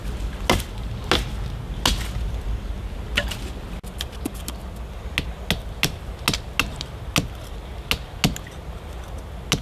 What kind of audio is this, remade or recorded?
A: recorded